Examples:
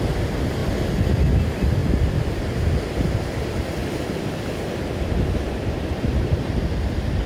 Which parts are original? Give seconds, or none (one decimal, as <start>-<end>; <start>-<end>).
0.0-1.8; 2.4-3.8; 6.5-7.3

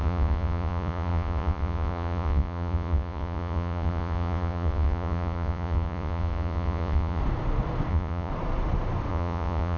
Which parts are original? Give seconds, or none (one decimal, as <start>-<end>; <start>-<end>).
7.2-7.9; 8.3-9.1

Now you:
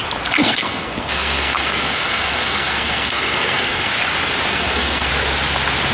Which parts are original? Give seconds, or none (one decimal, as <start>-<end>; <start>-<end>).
0.0-0.4; 3.9-4.5; 5.1-5.9

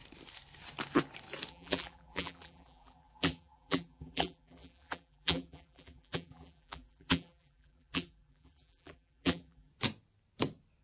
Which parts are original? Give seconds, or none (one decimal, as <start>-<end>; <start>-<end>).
0.0-1.5; 9.7-10.8